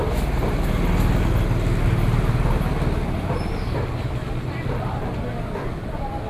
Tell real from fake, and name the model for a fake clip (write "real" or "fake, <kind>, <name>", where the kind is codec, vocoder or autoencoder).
real